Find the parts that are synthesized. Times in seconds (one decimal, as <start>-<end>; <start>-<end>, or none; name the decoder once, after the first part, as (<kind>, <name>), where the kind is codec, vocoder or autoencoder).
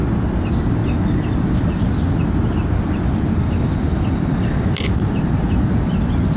none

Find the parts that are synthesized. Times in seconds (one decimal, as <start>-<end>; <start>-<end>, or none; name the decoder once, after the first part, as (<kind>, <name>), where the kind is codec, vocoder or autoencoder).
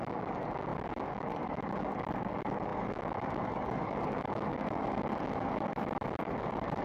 0.0-6.8 (codec, DAC)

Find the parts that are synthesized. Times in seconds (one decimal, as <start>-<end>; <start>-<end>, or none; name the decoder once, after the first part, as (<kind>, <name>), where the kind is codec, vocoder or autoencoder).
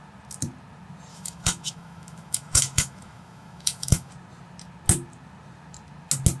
1.1-4.1 (autoencoder, DAC-VAE)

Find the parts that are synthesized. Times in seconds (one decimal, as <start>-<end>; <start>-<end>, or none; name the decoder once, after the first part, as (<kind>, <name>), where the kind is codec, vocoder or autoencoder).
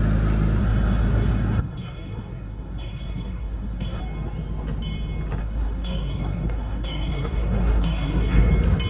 0.6-4.0 (codec, SNAC); 5.4-8.5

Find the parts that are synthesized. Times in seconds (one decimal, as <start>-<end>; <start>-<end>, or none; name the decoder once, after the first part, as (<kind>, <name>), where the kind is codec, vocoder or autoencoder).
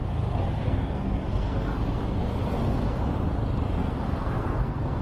0.0-3.0 (codec, SNAC); 3.8-5.0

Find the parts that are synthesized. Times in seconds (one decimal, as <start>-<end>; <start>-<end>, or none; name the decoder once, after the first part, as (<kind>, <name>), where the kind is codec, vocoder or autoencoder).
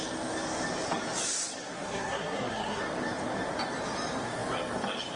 1.6-2.8 (codec, SNAC)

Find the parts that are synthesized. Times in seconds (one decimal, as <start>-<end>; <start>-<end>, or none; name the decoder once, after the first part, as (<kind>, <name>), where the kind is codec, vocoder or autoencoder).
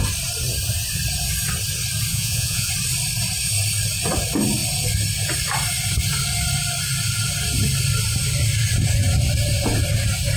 2.1-2.7 (vocoder, Vocos)